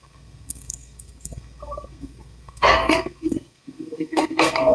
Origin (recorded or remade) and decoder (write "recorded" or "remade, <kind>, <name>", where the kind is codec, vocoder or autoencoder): remade, codec, SNAC